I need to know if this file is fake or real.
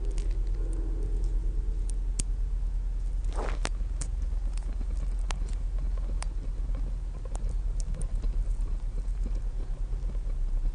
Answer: real